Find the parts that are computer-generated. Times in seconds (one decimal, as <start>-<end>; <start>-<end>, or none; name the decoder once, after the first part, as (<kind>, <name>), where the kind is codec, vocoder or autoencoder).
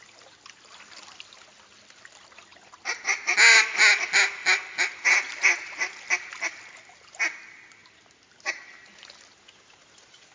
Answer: none